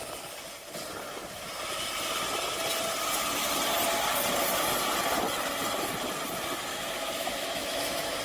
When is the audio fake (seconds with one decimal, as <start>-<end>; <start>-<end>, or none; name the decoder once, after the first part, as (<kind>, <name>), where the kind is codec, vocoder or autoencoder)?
6.7-8.2 (autoencoder, DAC-VAE)